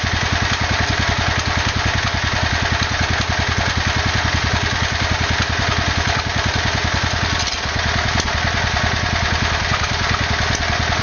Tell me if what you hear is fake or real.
real